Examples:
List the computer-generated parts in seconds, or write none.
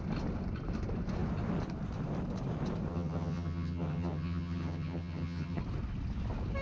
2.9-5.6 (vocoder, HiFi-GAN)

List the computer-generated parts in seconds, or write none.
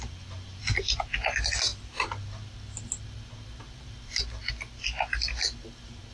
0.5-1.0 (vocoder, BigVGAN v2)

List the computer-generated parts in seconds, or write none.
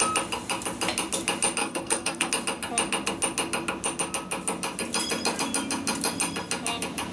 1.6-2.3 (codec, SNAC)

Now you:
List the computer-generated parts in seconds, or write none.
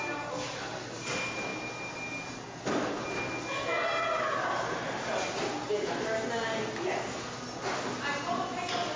none